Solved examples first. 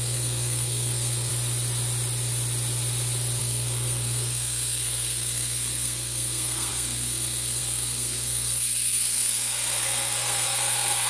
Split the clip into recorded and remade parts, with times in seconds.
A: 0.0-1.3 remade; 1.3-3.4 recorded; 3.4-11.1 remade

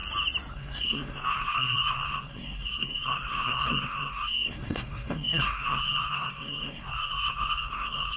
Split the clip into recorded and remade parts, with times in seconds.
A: 0.0-0.5 recorded; 0.5-8.2 remade

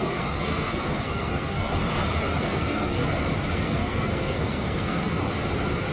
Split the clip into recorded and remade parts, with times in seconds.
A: 0.0-1.7 remade; 1.7-2.4 recorded; 2.4-3.0 remade; 3.0-3.5 recorded; 3.5-5.2 remade; 5.2-5.9 recorded

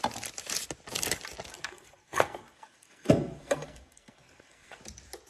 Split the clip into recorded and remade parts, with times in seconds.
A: 0.0-1.6 recorded; 1.6-4.8 remade; 4.8-5.3 recorded

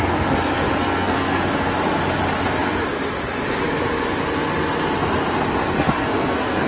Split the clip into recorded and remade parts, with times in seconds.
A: 0.0-0.8 recorded; 0.8-1.4 remade; 1.4-5.7 recorded; 5.7-6.7 remade